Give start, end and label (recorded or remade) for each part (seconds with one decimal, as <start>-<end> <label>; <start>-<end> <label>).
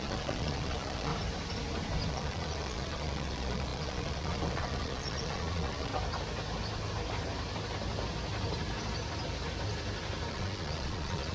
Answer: 0.0-1.1 remade; 1.1-2.1 recorded; 2.1-5.9 remade; 5.9-10.3 recorded; 10.3-11.3 remade